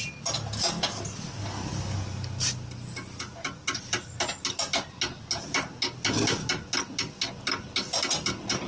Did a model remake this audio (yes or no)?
no